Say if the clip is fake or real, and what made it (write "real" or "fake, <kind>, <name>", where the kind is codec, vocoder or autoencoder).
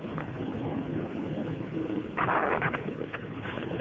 fake, codec, HILCodec